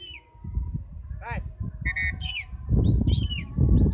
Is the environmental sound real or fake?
real